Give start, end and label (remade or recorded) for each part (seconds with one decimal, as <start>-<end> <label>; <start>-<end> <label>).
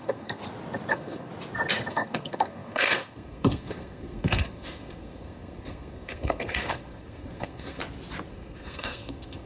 0.0-0.4 remade; 0.4-0.9 recorded; 0.9-1.3 remade; 1.3-1.9 recorded; 1.9-7.8 remade; 7.8-8.3 recorded; 8.3-9.5 remade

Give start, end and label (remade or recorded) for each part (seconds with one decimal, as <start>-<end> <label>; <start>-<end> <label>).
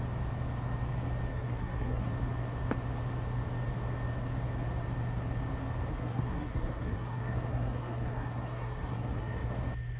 0.0-1.3 recorded; 1.3-2.1 remade; 2.1-5.9 recorded; 5.9-9.5 remade; 9.5-10.0 recorded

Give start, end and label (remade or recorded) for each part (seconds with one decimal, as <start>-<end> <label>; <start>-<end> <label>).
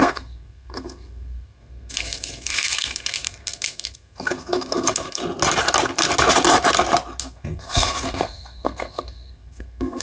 0.0-5.2 remade; 5.2-7.2 recorded; 7.2-10.0 remade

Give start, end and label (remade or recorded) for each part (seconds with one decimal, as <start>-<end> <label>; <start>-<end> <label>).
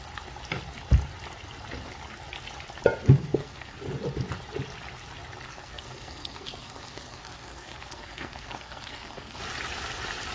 0.0-3.2 recorded; 3.2-3.8 remade; 3.8-5.5 recorded; 5.5-9.4 remade; 9.4-10.3 recorded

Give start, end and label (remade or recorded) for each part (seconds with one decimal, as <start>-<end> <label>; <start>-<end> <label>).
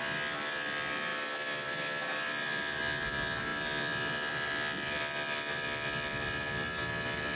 0.0-7.4 recorded